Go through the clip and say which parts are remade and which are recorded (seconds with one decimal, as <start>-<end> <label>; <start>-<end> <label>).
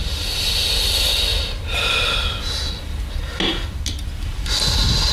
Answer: 0.0-5.1 recorded